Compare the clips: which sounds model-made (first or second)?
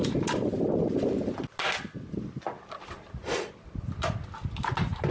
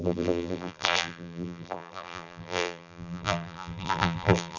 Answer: second